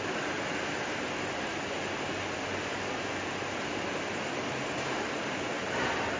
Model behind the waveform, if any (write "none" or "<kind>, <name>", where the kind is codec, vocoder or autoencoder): none